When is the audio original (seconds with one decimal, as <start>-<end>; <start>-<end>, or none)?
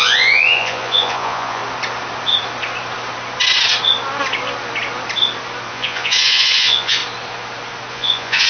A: 1.6-5.7; 7.0-7.9